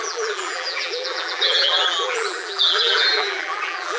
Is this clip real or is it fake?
fake